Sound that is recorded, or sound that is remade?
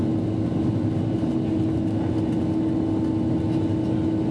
recorded